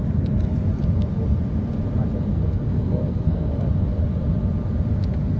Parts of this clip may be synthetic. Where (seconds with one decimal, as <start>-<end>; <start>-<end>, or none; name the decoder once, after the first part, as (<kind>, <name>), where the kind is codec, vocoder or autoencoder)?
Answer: 2.3-3.5 (codec, SNAC)